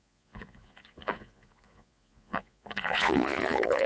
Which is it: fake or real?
fake